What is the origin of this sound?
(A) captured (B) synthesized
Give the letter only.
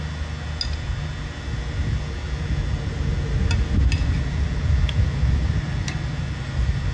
A